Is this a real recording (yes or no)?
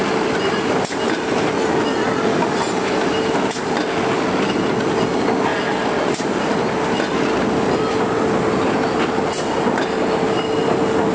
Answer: yes